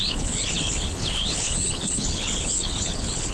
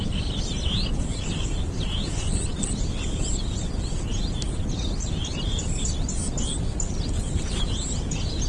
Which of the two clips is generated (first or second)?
first